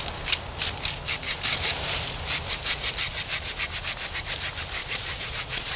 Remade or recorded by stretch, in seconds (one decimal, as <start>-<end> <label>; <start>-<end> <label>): 0.0-4.8 recorded; 4.8-5.8 remade